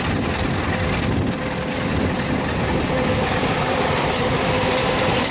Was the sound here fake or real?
real